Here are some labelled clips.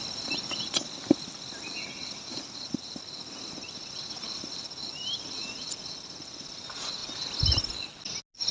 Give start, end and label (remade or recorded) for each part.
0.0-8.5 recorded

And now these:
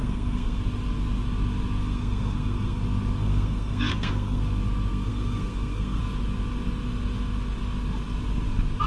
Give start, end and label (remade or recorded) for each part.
0.0-0.6 remade; 0.6-1.8 recorded; 1.8-2.8 remade; 2.8-3.2 recorded; 3.2-4.4 remade; 4.4-4.9 recorded; 4.9-6.0 remade; 6.0-8.9 recorded

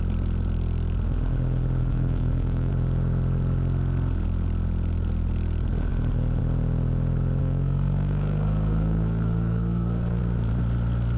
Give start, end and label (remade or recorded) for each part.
0.0-1.8 recorded; 1.8-2.7 remade; 2.7-7.4 recorded; 7.4-10.2 remade; 10.2-11.2 recorded